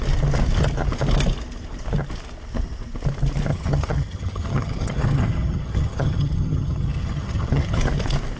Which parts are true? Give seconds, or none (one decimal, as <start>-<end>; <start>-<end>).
0.0-3.5; 7.8-8.4